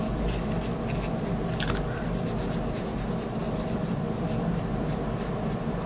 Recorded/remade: recorded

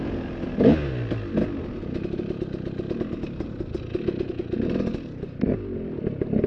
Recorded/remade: recorded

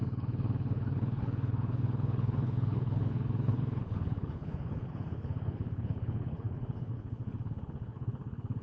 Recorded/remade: remade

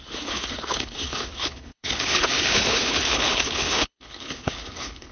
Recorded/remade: remade